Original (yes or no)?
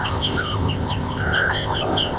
no